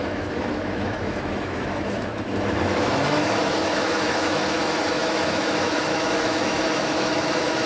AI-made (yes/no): yes